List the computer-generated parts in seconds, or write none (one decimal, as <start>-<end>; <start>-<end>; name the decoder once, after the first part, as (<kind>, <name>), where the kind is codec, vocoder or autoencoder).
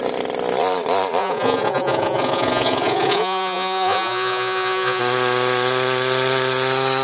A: 1.2-5.0 (vocoder, Vocos)